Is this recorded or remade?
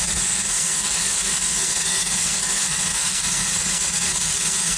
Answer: remade